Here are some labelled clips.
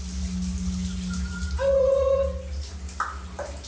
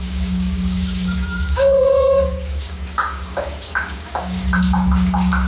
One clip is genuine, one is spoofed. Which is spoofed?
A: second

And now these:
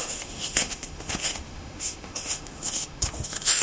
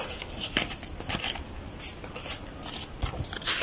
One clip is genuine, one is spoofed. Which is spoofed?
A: first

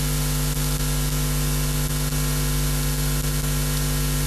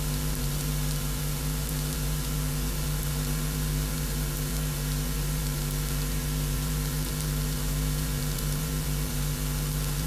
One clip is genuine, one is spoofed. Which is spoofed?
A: second